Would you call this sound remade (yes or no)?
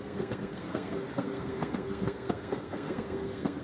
yes